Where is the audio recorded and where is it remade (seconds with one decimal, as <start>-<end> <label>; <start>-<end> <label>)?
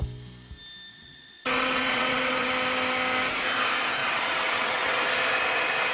0.0-0.9 recorded; 0.9-2.5 remade; 2.5-4.0 recorded; 4.0-5.0 remade; 5.0-5.9 recorded